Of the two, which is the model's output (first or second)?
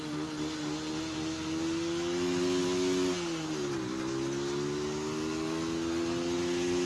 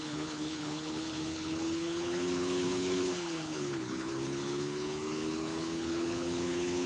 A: second